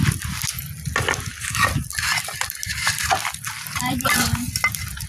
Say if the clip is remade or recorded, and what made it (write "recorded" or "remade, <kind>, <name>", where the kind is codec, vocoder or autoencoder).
recorded